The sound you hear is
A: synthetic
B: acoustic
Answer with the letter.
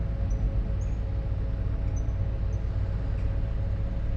B